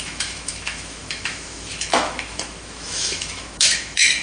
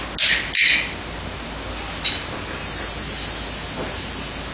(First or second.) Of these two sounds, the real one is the second